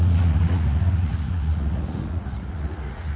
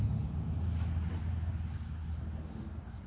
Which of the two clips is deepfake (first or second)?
first